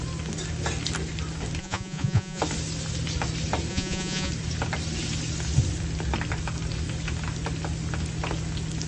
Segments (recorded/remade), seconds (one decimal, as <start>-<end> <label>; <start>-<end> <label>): 0.0-1.6 recorded; 1.6-2.4 remade; 2.4-3.7 recorded; 3.7-4.3 remade; 4.3-8.9 recorded